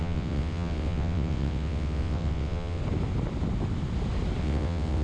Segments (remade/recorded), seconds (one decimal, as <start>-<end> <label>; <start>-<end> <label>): 0.0-2.8 remade; 2.8-4.4 recorded; 4.4-5.0 remade